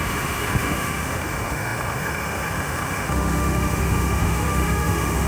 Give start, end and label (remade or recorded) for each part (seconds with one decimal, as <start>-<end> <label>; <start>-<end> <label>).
0.0-5.3 remade